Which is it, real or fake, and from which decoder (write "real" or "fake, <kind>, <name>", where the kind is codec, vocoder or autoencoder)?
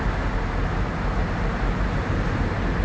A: fake, vocoder, BigVGAN v2